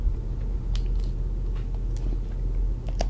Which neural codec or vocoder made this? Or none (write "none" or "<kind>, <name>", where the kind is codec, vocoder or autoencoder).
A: none